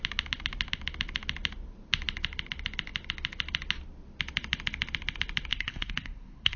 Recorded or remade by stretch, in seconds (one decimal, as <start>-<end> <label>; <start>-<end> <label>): 0.0-5.5 recorded; 5.5-6.6 remade

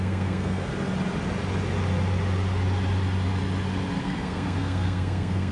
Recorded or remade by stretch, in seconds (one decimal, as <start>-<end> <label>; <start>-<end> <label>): 0.0-0.7 remade; 0.7-4.0 recorded; 4.0-5.5 remade

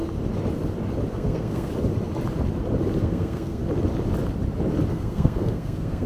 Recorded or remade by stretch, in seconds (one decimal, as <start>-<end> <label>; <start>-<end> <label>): 0.0-1.1 recorded; 1.1-1.7 remade; 1.7-3.0 recorded; 3.0-3.6 remade; 3.6-4.9 recorded; 4.9-6.1 remade

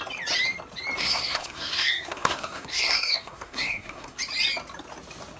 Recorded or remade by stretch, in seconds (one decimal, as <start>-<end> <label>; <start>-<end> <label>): 0.0-1.0 recorded; 1.0-4.2 remade; 4.2-5.4 recorded

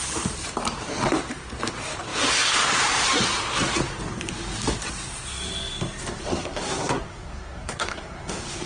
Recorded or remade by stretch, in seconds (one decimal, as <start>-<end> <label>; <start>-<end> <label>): 0.0-6.3 recorded; 6.3-8.7 remade

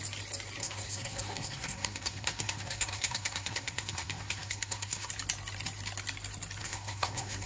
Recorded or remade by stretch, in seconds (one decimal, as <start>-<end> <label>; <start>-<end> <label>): 0.0-0.6 recorded; 0.6-5.1 remade; 5.1-6.6 recorded; 6.6-7.5 remade